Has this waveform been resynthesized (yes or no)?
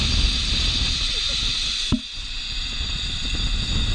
no